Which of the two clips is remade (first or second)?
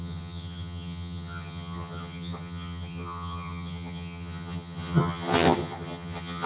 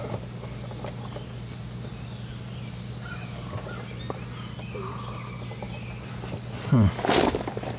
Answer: first